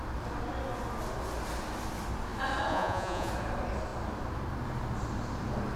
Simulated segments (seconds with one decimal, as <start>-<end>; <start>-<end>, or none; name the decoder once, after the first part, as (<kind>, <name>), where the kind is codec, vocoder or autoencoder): 2.7-3.3 (vocoder, Vocos)